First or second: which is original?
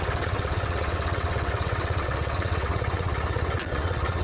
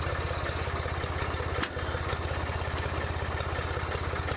second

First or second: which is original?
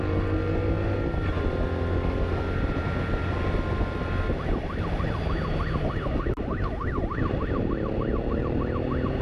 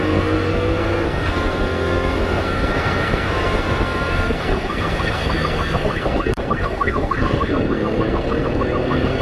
first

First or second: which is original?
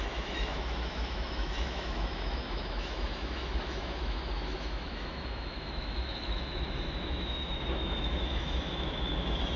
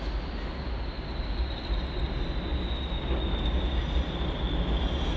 second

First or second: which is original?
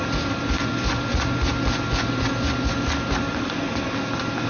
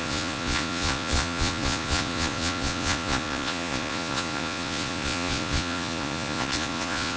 first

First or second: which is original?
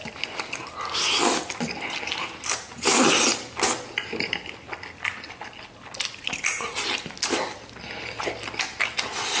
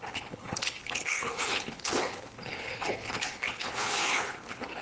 first